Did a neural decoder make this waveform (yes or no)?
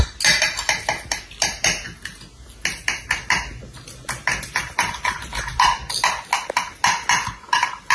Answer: no